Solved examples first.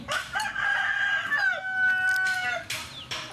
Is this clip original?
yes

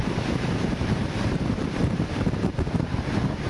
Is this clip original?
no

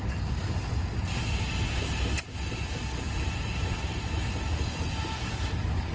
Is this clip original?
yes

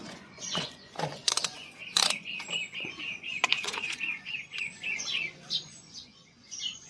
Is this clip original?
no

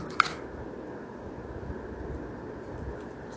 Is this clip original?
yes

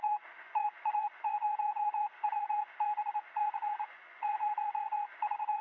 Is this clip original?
no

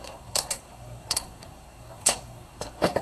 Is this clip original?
no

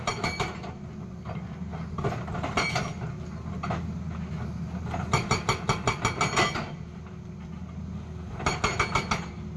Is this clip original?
yes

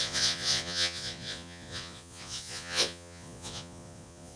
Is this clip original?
no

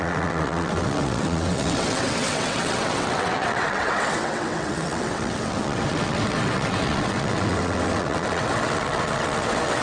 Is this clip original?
no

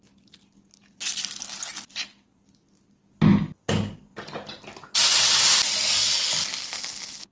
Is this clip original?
yes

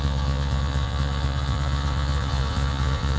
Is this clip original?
no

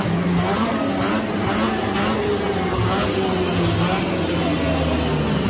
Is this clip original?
yes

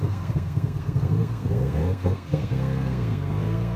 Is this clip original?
no